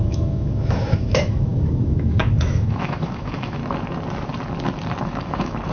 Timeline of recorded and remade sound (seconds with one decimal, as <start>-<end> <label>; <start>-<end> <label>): 0.0-3.6 remade; 3.6-5.0 recorded; 5.0-5.7 remade

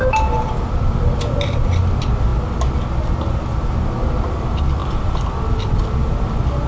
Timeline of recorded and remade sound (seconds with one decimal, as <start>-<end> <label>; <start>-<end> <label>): 0.0-6.7 recorded